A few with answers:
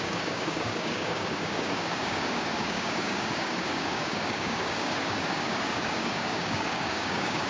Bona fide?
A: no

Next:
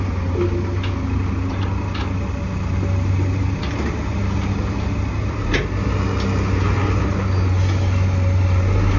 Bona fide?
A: yes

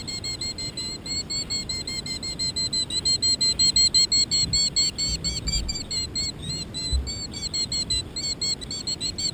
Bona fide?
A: yes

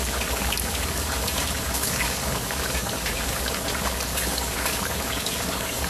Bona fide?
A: no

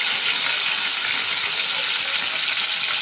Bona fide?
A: yes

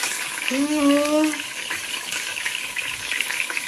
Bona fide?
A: no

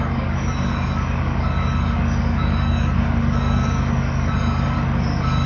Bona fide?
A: no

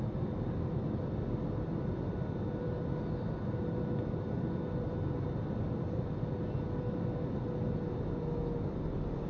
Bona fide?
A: yes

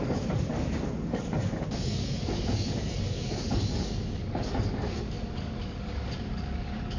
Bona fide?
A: no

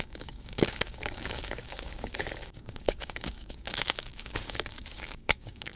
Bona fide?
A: no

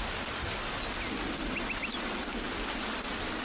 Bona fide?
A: yes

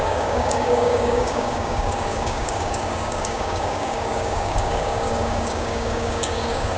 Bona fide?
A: no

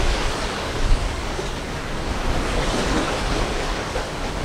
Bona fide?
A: no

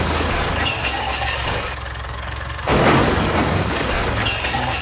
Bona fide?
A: no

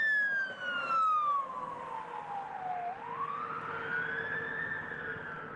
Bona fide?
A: yes